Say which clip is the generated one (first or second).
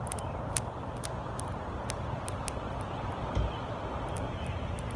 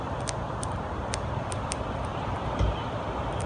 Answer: second